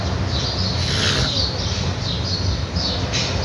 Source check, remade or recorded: recorded